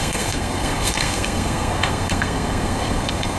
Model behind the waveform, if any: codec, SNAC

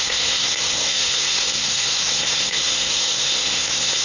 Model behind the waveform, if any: codec, SNAC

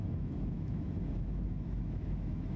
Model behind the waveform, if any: autoencoder, DAC-VAE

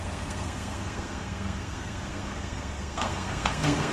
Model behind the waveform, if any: codec, SNAC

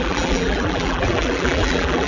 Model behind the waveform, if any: vocoder, BigVGAN v2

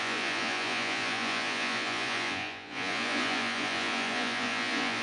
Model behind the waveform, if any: vocoder, Vocos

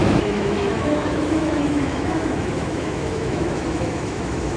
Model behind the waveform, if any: autoencoder, DAC-VAE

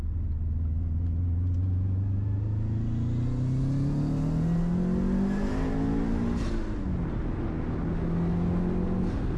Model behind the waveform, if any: none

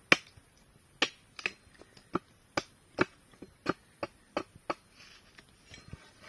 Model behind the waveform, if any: none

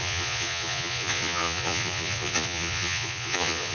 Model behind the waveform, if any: vocoder, Vocos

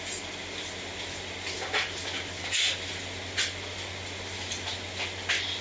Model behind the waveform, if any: none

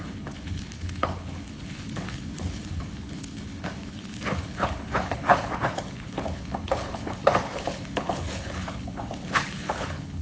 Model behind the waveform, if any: codec, HILCodec